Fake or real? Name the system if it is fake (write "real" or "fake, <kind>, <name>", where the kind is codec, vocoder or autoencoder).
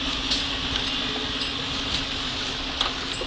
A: real